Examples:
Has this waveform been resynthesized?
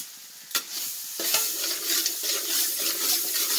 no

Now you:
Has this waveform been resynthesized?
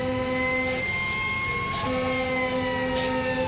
no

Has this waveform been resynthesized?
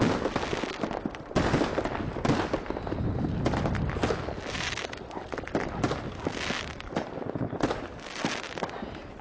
no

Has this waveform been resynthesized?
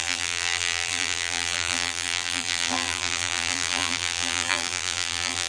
yes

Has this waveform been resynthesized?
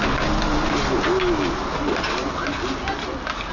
no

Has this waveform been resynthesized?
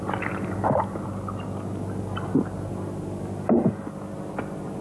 no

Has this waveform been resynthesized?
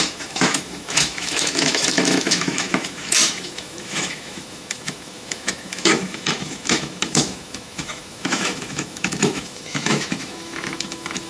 yes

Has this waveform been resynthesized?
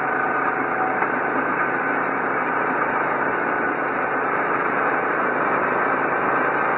no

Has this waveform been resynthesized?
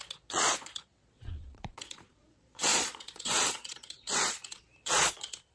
yes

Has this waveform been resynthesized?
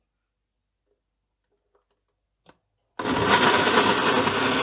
no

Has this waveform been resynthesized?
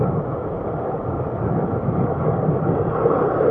no